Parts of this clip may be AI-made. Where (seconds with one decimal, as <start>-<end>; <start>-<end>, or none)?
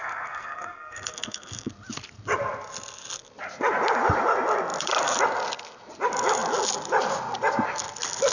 0.0-1.7